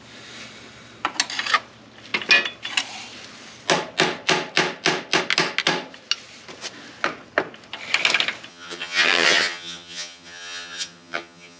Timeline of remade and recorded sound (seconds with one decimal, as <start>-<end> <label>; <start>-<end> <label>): 0.0-8.5 recorded; 8.5-11.6 remade